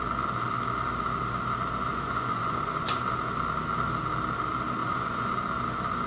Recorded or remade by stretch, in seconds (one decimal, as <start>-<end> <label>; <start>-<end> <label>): 0.0-1.9 recorded; 1.9-3.0 remade; 3.0-4.8 recorded; 4.8-5.3 remade; 5.3-6.1 recorded